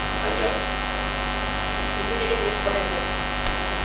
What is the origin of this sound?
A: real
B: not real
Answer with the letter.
A